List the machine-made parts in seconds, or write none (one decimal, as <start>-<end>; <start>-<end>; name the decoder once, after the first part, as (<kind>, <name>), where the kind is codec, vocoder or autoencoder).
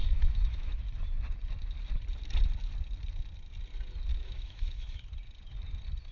0.0-0.8 (autoencoder, DAC-VAE); 4.1-5.0